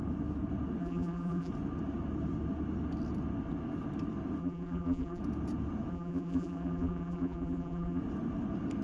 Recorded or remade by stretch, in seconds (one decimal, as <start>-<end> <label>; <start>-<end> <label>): 0.0-0.8 recorded; 0.8-1.5 remade; 1.5-4.4 recorded; 4.4-5.2 remade; 5.2-5.9 recorded; 5.9-8.0 remade; 8.0-8.8 recorded